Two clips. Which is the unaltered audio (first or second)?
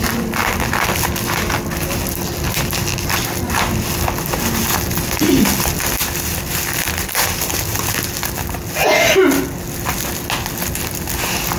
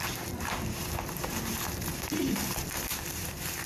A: first